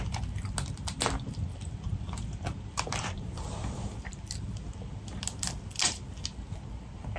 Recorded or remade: recorded